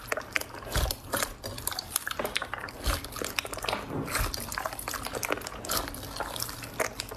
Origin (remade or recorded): recorded